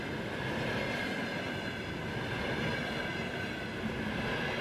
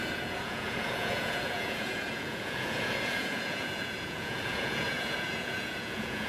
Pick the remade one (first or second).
second